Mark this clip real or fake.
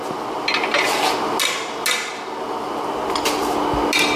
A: real